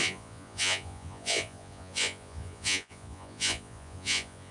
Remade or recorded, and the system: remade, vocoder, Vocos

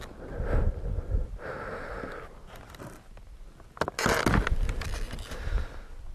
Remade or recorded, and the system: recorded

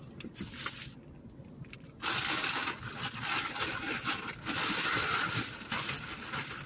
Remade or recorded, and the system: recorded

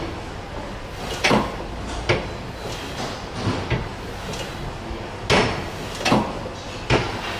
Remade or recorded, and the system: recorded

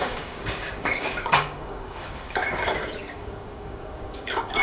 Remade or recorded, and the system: remade, codec, DAC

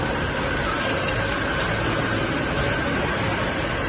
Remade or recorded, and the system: recorded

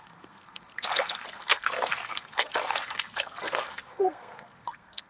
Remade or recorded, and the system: remade, codec, SNAC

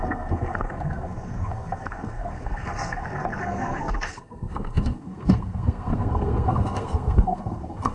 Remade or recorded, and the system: remade, codec, SNAC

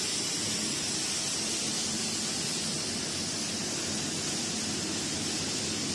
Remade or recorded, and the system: recorded